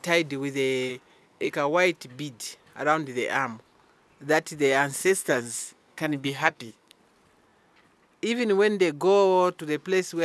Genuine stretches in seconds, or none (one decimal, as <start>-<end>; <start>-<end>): 0.0-0.9; 1.5-5.0; 7.0-10.2